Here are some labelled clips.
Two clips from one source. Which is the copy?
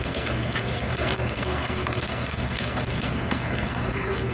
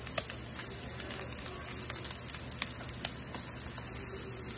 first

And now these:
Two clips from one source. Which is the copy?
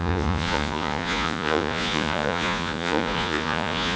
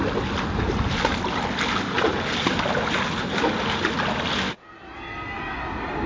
first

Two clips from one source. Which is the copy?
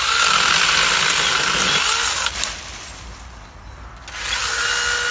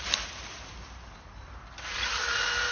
second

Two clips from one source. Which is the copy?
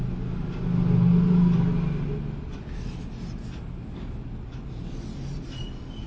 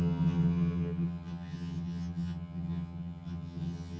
second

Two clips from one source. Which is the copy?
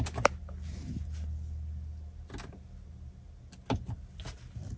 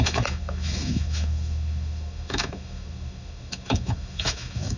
second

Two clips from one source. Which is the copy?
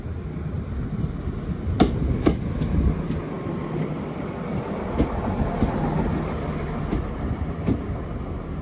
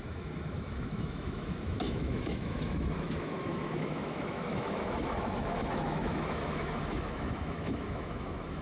second